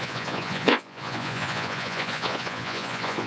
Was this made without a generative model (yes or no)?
no